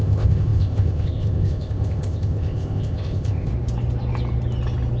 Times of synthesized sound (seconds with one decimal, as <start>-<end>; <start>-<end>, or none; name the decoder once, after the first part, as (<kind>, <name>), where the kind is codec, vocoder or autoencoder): 0.0-3.5 (codec, ZipCodec)